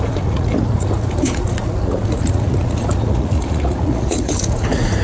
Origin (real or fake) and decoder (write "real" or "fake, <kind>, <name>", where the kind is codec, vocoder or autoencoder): fake, vocoder, Vocos